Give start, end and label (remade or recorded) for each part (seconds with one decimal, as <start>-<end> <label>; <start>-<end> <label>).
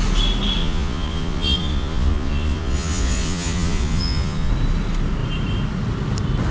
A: 0.0-0.6 recorded; 0.6-4.5 remade; 4.5-6.5 recorded